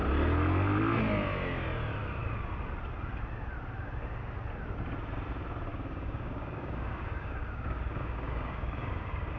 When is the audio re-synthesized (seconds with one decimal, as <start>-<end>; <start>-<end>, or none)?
5.7-9.4